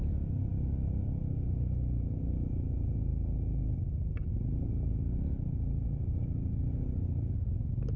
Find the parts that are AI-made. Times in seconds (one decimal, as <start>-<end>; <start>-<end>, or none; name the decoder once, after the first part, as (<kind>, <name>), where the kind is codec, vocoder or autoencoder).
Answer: none